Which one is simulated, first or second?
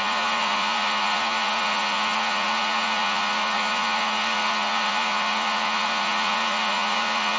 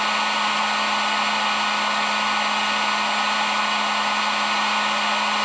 first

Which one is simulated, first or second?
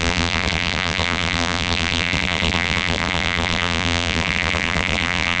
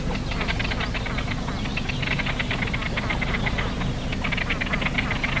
first